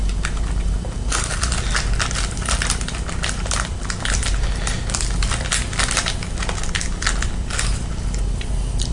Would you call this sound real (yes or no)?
yes